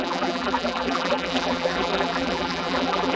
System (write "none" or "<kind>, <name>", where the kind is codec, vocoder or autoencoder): vocoder, BigVGAN v2